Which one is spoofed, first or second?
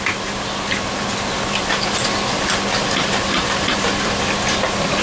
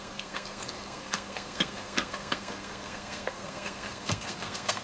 second